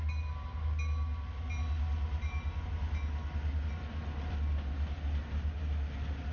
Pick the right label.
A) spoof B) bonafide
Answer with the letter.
B